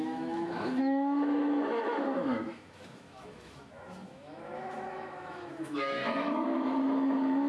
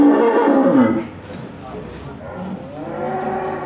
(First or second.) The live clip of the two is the second